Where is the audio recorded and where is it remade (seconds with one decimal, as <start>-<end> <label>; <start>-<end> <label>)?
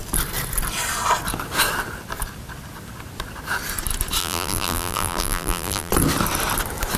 0.0-4.2 recorded; 4.2-5.9 remade; 5.9-7.0 recorded